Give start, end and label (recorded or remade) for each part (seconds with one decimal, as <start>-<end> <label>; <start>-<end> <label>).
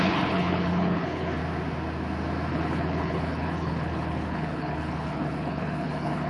0.0-1.4 remade; 1.4-2.5 recorded; 2.5-6.3 remade